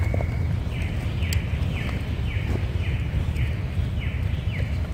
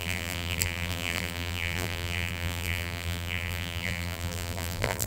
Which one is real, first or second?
first